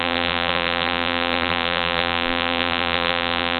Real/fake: fake